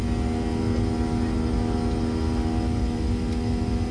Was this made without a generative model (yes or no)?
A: yes